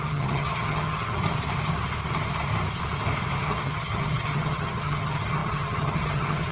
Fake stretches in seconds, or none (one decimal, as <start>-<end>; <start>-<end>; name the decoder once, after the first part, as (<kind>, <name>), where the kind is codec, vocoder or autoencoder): 0.0-1.2 (vocoder, HiFi-GAN); 3.4-6.5